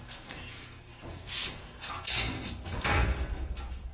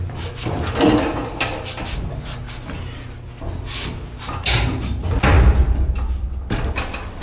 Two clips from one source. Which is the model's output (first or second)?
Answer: first